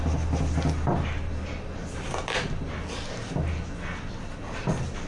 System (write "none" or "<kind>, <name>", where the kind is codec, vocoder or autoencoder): none